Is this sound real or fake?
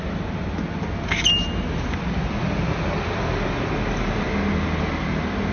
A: real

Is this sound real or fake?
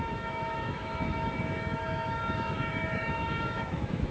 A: fake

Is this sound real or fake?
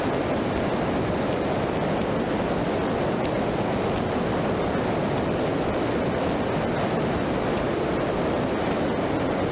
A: real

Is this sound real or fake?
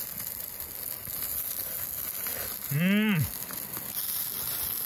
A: real